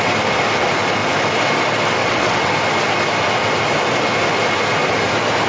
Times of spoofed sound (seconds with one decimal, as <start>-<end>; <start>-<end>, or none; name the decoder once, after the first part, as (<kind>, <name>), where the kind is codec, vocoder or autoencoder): 2.0-2.5 (vocoder, WaveNeXt)